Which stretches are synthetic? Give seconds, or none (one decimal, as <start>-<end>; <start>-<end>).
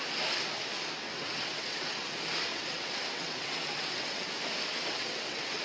1.0-2.1; 2.5-4.3; 4.7-5.6